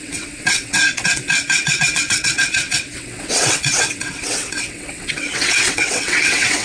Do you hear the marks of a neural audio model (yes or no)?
yes